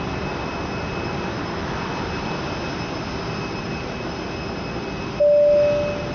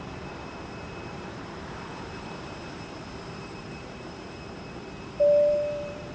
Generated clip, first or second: second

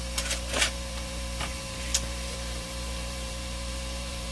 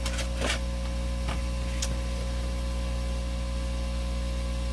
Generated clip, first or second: first